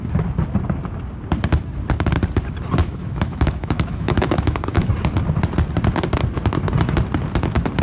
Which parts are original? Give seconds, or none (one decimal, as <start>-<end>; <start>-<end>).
0.0-2.8; 4.9-7.8